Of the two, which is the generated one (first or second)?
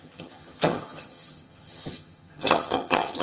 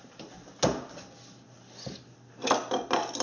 first